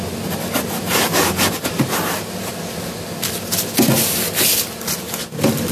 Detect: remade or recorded recorded